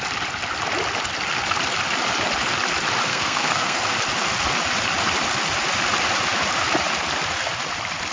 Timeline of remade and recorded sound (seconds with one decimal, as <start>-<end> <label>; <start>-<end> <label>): 0.0-3.1 recorded; 3.1-3.8 remade; 3.8-8.1 recorded